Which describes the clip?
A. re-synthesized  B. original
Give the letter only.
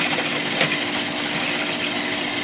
B